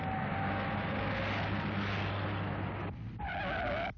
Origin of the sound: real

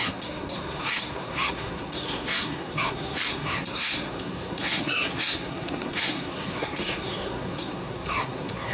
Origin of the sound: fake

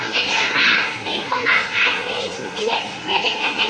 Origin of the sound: fake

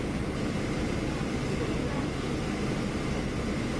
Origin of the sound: real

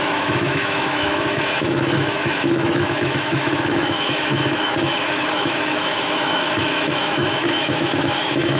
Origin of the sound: fake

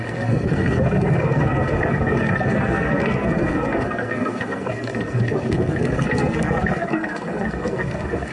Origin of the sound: fake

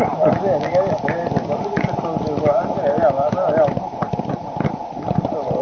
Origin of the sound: real